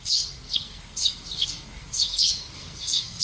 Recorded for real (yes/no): no